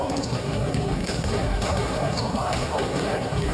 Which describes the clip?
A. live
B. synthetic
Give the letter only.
B